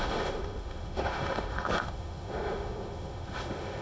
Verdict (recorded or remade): remade